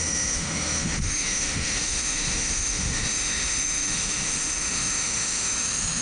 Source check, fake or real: fake